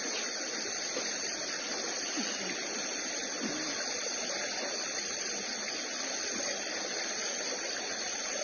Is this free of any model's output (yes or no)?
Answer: no